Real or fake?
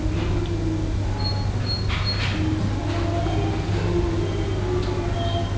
real